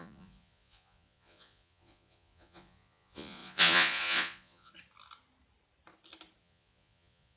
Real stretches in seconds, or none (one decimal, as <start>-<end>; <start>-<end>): 4.7-6.4